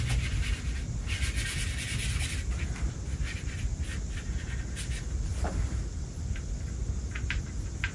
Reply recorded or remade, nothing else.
recorded